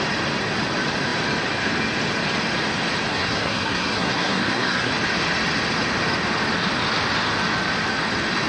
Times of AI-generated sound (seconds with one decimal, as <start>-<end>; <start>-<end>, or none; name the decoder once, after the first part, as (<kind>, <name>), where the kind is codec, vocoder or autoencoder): 3.1-4.9 (codec, SNAC)

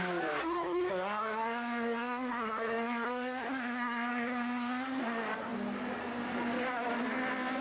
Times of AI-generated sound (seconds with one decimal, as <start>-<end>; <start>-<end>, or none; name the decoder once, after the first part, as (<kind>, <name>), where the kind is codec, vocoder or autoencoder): 0.4-5.0 (codec, SNAC)

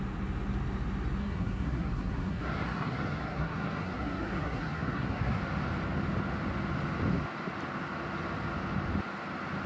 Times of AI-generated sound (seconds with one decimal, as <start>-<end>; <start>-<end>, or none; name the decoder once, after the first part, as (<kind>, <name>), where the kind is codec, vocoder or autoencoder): 1.2-5.4 (codec, SNAC)

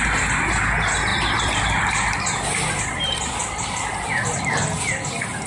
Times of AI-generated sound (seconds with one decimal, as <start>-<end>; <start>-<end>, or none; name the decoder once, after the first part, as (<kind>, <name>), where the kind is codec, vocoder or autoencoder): 1.1-4.4 (vocoder, BigVGAN v2)

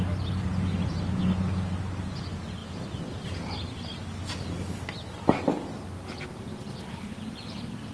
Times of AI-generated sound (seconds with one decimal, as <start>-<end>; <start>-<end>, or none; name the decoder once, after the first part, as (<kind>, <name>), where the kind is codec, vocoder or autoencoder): none

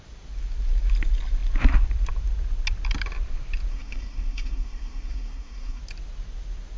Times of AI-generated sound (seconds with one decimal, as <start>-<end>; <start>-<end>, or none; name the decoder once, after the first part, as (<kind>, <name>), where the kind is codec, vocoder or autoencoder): 3.7-5.8 (codec, SNAC)

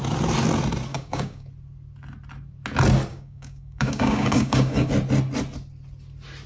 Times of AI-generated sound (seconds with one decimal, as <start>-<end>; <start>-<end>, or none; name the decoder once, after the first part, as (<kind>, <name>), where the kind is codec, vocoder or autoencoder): 0.9-1.5 (codec, DAC); 3.1-4.9